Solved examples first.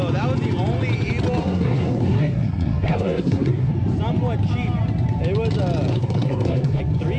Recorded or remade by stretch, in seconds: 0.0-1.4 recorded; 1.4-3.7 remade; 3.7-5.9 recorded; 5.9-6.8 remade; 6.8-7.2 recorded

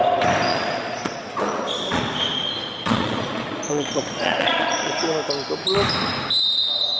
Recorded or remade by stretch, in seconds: 0.0-0.5 recorded; 0.5-2.0 remade; 2.0-2.8 recorded; 2.8-5.0 remade; 5.0-7.0 recorded

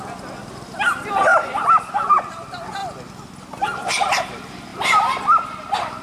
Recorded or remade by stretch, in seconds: 0.0-1.3 recorded; 1.3-2.1 remade; 2.1-6.0 recorded

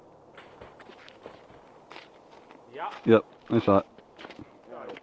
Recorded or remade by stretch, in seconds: 0.0-5.0 recorded

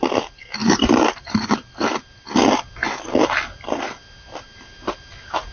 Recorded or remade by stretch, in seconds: 0.0-0.6 recorded; 0.6-1.7 remade; 1.7-5.5 recorded

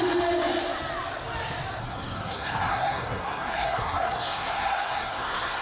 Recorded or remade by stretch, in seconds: 0.0-1.8 recorded; 1.8-5.6 remade

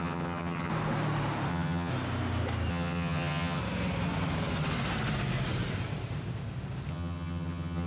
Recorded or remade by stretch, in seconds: 0.0-0.7 remade; 0.7-1.5 recorded; 1.5-1.9 remade; 1.9-2.7 recorded; 2.7-3.6 remade; 3.6-6.9 recorded; 6.9-7.9 remade

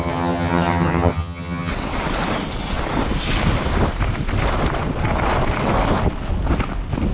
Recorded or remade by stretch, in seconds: 0.0-1.7 remade; 1.7-7.1 recorded